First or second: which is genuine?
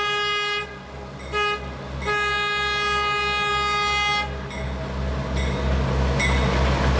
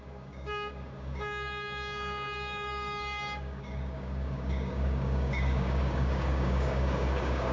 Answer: first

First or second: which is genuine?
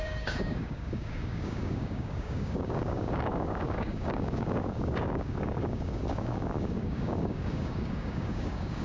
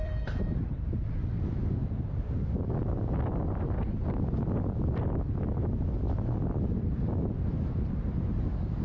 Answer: second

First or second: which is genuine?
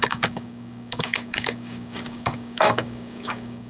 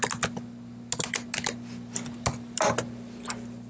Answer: second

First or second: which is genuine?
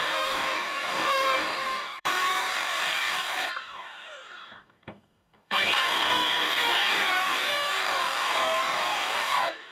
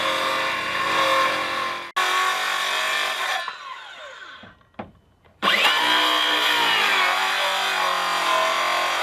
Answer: second